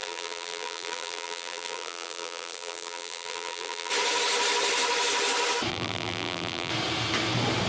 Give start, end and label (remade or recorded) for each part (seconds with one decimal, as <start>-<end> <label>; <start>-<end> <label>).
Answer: 0.0-3.9 remade; 3.9-5.7 recorded; 5.7-6.7 remade; 6.7-7.7 recorded